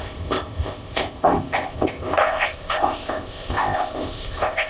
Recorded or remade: remade